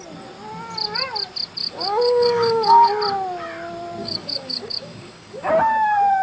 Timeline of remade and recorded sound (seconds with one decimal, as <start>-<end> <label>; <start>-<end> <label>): 0.0-1.6 recorded; 1.6-2.9 remade; 2.9-4.0 recorded; 4.0-5.5 remade; 5.5-6.2 recorded